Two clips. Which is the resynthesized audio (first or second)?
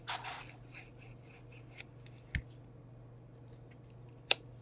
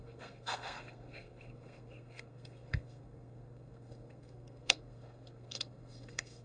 second